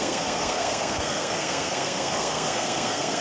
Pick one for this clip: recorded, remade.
remade